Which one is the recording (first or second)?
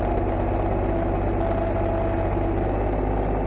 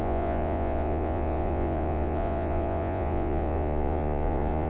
first